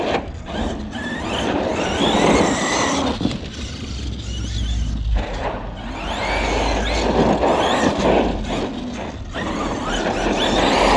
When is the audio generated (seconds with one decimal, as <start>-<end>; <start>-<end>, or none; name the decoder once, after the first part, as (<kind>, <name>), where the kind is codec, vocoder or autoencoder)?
none